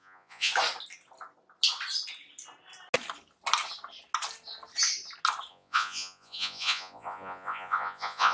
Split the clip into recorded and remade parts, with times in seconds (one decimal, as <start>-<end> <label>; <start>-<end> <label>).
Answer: 0.0-0.5 remade; 0.5-5.5 recorded; 5.5-8.3 remade